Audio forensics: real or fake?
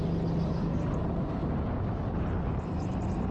real